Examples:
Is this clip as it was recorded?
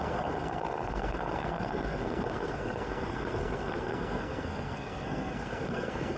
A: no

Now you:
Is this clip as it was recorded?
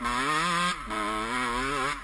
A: yes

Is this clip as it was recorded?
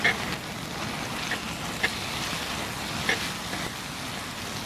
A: yes